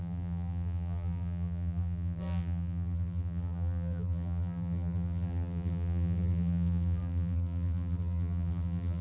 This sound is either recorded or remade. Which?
remade